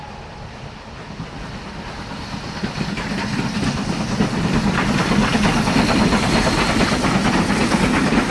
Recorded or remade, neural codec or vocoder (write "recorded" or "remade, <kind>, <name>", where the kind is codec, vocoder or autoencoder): recorded